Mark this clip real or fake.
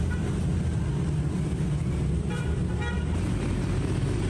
real